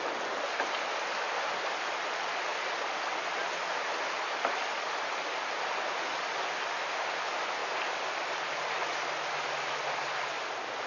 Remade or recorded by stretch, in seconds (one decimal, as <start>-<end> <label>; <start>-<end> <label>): 0.0-10.9 recorded